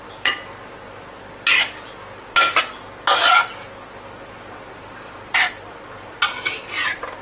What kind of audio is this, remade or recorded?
recorded